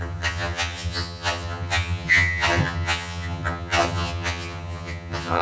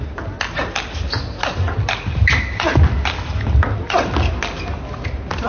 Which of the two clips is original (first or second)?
second